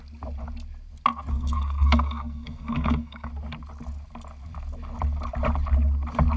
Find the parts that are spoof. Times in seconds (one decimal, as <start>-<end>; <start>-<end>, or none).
1.3-3.3